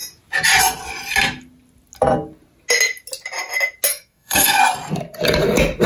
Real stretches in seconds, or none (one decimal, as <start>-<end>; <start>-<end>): 0.0-3.9; 4.6-5.9